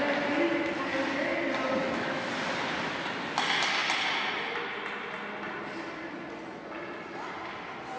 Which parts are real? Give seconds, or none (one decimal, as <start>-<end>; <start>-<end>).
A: 0.0-1.8; 2.3-8.0